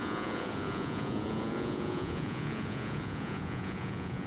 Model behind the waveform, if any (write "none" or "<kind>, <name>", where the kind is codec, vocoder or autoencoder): vocoder, Vocos